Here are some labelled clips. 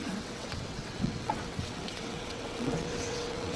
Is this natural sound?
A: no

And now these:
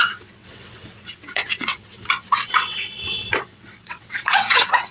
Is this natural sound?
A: no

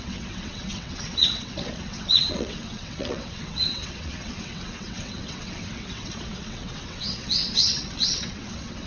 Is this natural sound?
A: no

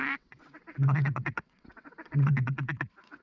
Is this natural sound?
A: no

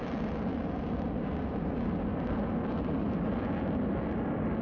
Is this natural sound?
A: yes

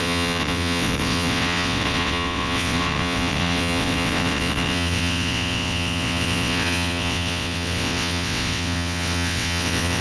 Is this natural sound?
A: no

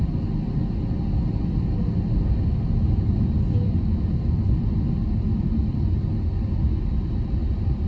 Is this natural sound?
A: yes